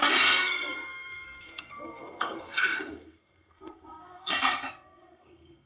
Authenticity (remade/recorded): remade